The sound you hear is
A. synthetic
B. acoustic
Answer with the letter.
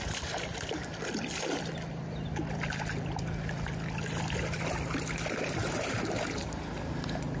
B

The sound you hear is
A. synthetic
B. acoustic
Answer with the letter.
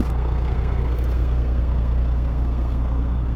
A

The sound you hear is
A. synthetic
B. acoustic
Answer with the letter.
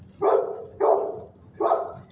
B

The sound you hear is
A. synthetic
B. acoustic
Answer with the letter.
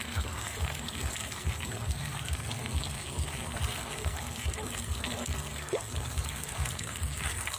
A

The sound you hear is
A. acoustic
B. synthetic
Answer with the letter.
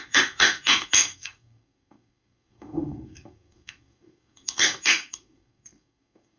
B